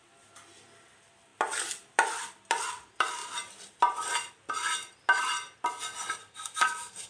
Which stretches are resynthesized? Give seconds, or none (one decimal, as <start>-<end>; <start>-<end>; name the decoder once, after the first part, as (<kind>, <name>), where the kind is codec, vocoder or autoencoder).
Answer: 6.2-7.1 (codec, SNAC)